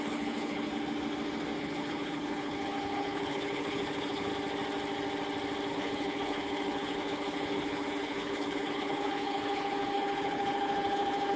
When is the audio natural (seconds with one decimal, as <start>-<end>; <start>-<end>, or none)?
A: 0.7-1.6; 4.3-5.7